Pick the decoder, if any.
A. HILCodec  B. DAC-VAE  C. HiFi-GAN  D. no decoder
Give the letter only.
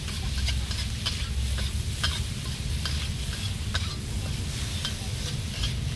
D